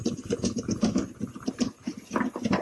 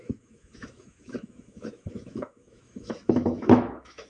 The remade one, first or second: second